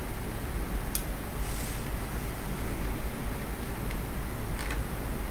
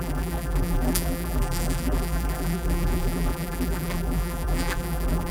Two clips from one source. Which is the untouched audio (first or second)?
first